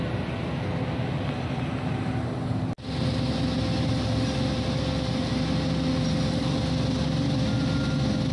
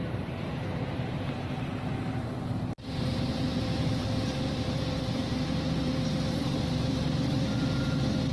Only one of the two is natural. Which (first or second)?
first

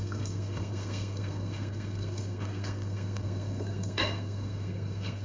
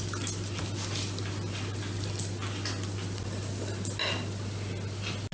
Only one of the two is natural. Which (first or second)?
second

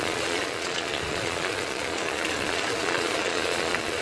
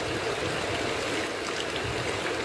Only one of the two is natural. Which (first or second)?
second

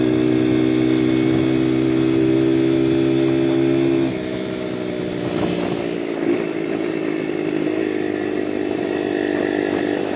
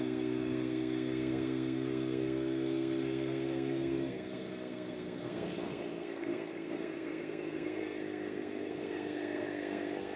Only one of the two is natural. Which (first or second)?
first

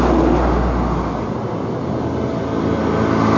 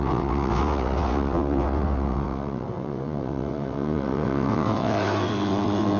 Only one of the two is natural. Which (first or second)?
first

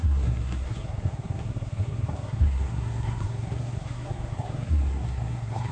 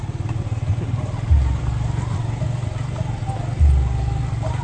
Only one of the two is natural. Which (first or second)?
second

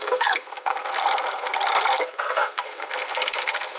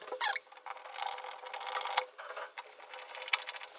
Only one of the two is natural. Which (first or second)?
second